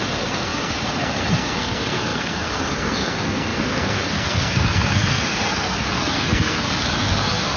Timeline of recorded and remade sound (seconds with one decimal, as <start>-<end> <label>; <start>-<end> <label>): 0.0-7.6 remade